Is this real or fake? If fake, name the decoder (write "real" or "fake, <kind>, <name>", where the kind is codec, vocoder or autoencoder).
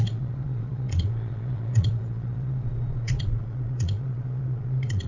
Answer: fake, vocoder, Vocos